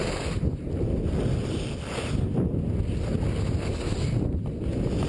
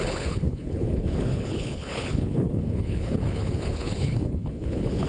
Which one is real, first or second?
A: first